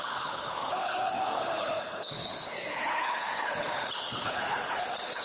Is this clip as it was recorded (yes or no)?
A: no